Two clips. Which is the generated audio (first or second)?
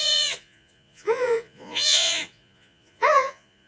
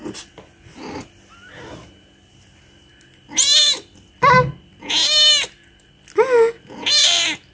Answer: first